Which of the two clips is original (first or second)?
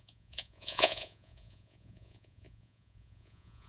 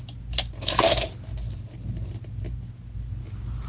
second